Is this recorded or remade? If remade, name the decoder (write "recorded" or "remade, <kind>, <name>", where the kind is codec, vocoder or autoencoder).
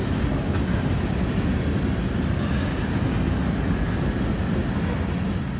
recorded